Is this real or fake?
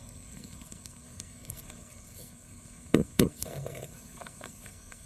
fake